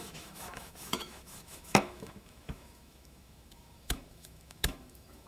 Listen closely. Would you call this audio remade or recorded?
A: remade